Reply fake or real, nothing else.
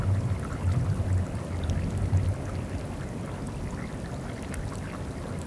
real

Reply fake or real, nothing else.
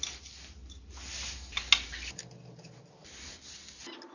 real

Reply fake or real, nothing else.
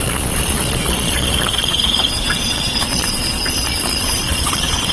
fake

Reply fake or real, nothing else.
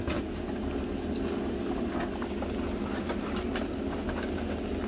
real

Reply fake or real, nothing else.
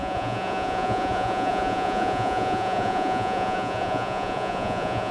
fake